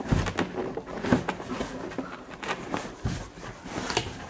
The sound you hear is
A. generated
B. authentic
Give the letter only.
B